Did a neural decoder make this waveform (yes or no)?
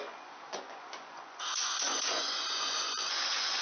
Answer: yes